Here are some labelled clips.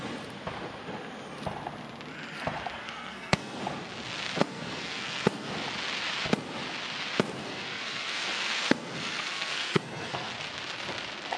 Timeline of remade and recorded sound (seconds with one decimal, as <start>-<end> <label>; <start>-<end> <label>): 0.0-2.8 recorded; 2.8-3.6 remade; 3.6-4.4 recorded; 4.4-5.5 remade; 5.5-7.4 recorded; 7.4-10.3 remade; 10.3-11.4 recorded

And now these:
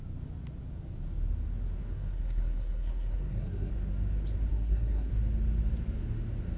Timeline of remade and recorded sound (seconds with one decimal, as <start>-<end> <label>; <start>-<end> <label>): 0.0-1.9 recorded; 1.9-3.7 remade; 3.7-4.5 recorded; 4.5-5.1 remade; 5.1-6.6 recorded

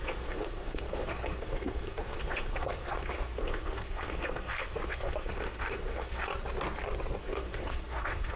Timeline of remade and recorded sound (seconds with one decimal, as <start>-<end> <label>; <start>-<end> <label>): 0.0-6.3 remade; 6.3-7.2 recorded; 7.2-8.4 remade